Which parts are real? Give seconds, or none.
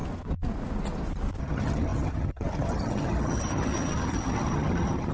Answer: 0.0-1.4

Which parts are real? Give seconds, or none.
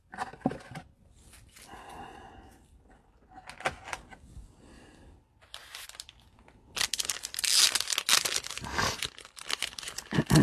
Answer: 0.0-10.4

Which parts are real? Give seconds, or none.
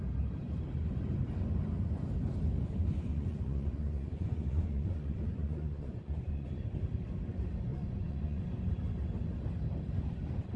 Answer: 0.0-3.1; 6.5-7.7; 8.4-10.6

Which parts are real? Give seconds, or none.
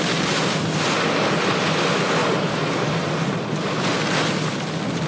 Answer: 0.0-2.2; 3.1-5.1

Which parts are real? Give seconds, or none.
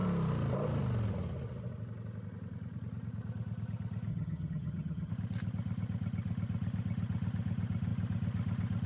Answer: 0.0-4.1; 5.1-8.9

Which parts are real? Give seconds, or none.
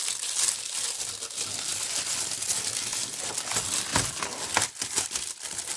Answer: 0.0-5.8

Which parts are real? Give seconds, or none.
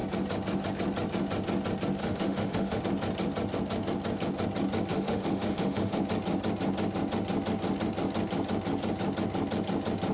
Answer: 0.0-2.0; 2.8-4.9; 6.0-10.1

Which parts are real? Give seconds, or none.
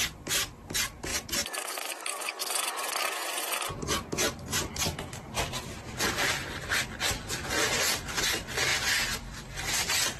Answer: 0.0-10.2